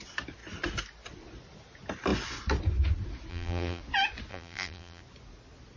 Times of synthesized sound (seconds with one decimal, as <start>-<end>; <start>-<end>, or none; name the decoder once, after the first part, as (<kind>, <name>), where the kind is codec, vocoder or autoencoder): 3.3-3.8 (vocoder, BigVGAN v2); 4.3-5.0